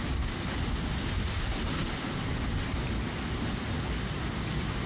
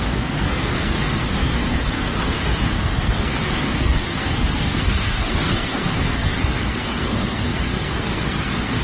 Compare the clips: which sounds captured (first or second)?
first